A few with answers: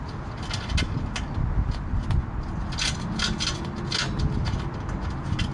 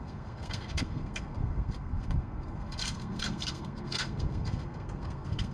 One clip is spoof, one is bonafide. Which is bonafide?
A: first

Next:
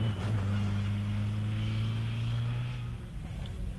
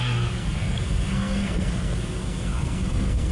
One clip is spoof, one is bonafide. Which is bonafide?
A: first